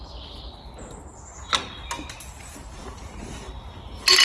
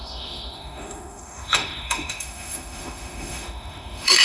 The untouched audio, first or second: first